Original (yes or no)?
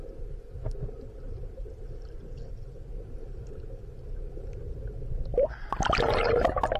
yes